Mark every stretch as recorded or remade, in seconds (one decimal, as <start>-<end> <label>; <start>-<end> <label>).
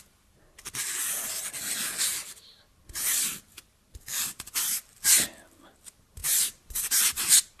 0.0-7.6 recorded